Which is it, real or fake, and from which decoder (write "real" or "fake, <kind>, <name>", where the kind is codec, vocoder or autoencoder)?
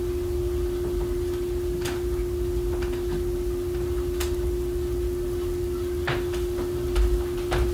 real